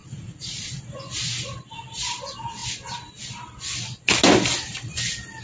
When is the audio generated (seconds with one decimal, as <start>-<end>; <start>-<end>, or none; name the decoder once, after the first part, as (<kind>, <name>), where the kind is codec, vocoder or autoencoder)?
0.0-0.8 (vocoder, Vocos)